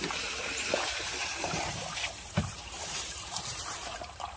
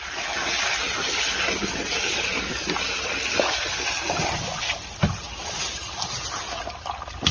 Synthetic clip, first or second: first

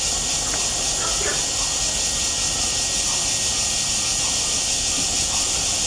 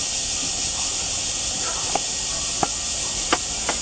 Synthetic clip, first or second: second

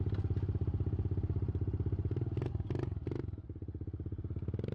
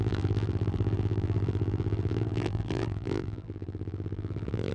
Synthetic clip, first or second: second